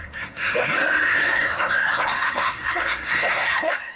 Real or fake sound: fake